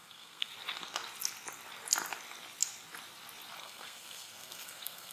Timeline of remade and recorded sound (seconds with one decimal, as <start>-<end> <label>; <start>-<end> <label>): 0.0-0.5 remade; 0.5-3.6 recorded; 3.6-5.1 remade